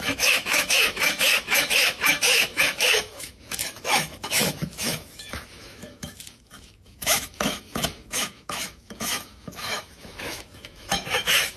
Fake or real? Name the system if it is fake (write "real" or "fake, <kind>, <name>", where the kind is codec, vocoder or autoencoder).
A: fake, autoencoder, DAC-VAE